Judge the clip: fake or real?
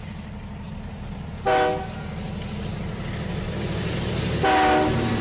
real